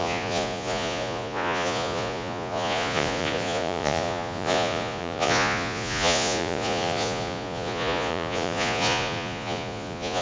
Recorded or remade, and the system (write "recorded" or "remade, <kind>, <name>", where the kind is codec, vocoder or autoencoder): remade, vocoder, Vocos